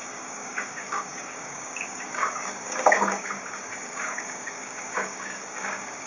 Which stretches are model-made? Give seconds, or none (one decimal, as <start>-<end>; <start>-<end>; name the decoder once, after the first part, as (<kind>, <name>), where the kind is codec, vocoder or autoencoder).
0.0-6.1 (codec, DAC)